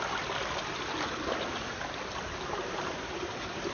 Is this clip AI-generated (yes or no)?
no